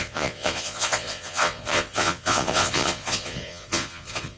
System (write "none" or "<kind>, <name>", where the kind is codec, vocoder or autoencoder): vocoder, Vocos